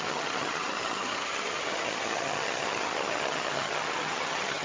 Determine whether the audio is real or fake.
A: fake